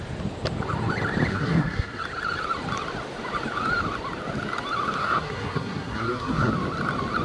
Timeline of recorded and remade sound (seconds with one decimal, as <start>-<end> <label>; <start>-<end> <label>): 0.0-1.3 recorded; 1.3-2.0 remade; 2.0-5.0 recorded; 5.0-6.5 remade; 6.5-7.2 recorded